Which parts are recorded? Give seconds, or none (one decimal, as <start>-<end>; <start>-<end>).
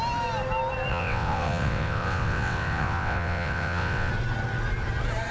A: 0.0-0.9; 4.1-5.3